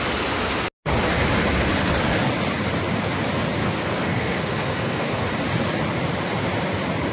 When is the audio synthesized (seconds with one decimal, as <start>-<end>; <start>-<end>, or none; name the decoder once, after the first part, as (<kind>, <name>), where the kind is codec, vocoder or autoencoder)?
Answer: 3.6-5.2 (codec, SNAC)